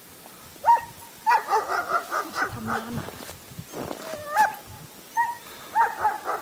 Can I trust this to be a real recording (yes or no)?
yes